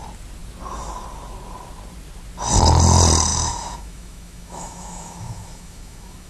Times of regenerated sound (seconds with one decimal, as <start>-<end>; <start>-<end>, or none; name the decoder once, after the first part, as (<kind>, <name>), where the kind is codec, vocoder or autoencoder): 3.3-6.3 (autoencoder, DAC-VAE)